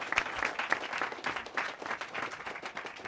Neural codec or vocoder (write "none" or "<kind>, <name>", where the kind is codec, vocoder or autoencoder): none